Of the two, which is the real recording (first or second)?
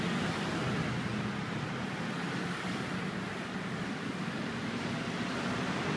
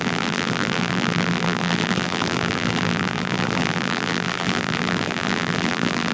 first